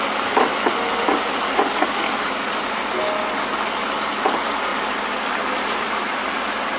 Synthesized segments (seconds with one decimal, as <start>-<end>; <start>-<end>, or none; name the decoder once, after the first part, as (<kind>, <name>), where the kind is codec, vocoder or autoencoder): none